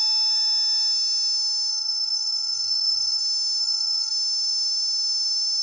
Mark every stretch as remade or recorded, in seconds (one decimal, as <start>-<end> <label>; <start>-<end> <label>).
0.0-1.7 recorded; 1.7-3.2 remade; 3.2-3.6 recorded; 3.6-4.1 remade; 4.1-5.6 recorded